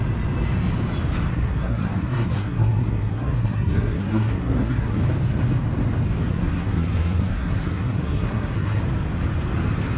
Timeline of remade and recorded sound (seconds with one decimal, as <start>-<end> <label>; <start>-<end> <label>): 0.0-1.3 recorded; 1.3-5.0 remade; 5.0-6.3 recorded; 6.3-8.8 remade; 8.8-10.0 recorded